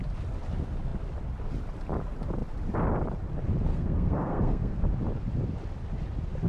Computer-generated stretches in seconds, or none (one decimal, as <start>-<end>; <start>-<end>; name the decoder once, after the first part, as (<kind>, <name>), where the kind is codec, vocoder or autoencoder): 3.7-4.8 (codec, SNAC)